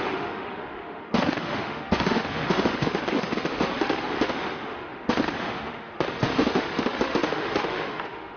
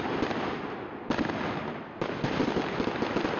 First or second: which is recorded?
second